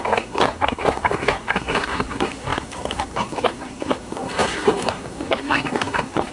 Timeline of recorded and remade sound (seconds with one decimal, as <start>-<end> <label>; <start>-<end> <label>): 0.0-6.3 remade